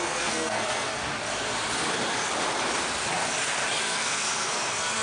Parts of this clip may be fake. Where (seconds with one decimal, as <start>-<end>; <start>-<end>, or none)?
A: 0.0-1.0; 3.8-5.0